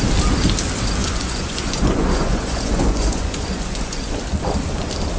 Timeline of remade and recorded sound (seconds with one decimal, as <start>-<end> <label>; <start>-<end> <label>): 0.0-1.0 recorded; 1.0-4.1 remade; 4.1-5.2 recorded